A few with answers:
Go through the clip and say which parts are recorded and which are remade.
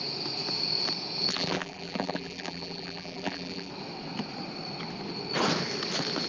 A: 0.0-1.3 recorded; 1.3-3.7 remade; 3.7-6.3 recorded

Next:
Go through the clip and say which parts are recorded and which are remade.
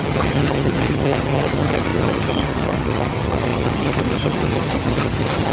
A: 0.0-5.5 remade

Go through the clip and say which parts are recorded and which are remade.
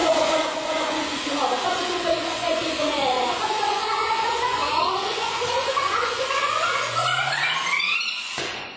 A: 0.0-7.0 remade; 7.0-8.1 recorded; 8.1-8.8 remade